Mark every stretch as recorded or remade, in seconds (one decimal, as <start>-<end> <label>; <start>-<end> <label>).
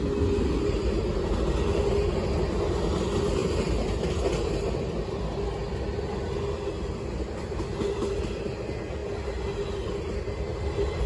0.0-10.5 recorded; 10.5-11.1 remade